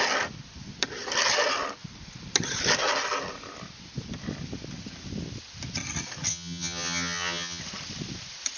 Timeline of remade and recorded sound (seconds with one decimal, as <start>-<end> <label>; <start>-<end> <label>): 0.0-6.3 recorded; 6.3-7.6 remade; 7.6-8.6 recorded